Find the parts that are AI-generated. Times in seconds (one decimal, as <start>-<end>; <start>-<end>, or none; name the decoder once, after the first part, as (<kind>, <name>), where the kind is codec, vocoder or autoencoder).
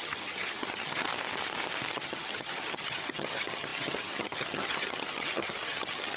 0.0-1.1 (vocoder, HiFi-GAN); 1.9-6.2